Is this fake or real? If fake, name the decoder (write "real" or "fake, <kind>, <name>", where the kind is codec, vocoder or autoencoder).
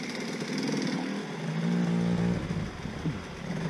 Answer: real